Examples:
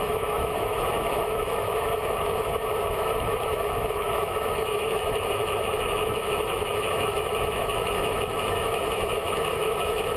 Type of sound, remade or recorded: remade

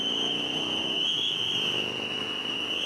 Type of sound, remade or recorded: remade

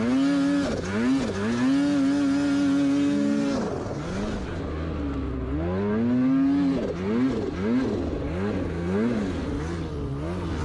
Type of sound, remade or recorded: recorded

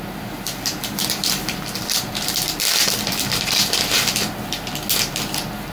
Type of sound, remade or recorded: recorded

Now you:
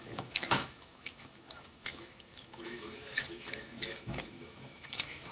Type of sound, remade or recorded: remade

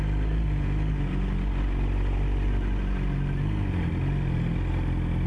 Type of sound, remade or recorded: recorded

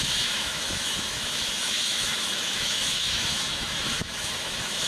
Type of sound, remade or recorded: remade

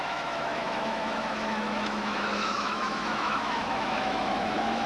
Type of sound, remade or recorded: remade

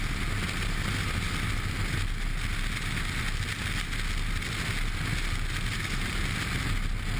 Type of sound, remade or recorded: recorded